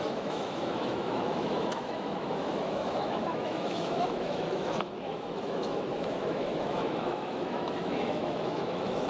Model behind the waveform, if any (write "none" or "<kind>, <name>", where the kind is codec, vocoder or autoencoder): autoencoder, DAC-VAE